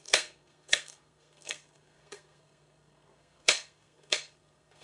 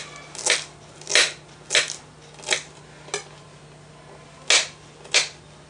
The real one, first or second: second